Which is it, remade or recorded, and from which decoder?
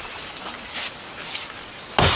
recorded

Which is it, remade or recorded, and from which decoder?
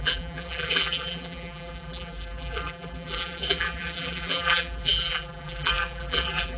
remade, vocoder, BigVGAN v2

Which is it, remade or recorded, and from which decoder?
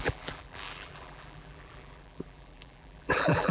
remade, vocoder, BigVGAN v2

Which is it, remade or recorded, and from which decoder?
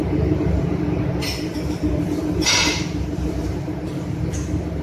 remade, vocoder, BigVGAN v2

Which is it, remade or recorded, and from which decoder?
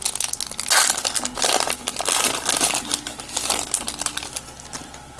recorded